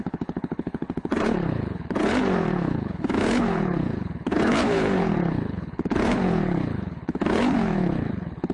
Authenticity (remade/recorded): remade